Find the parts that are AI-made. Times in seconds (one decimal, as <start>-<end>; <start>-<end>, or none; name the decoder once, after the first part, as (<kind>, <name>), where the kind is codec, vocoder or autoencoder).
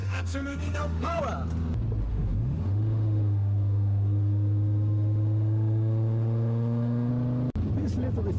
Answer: 0.0-1.2 (autoencoder, DAC-VAE); 2.1-7.1